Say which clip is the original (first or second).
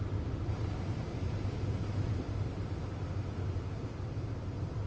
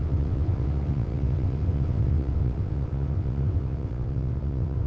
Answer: first